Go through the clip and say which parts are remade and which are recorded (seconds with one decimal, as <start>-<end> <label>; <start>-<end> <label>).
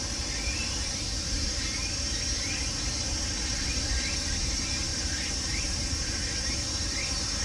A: 0.0-7.4 recorded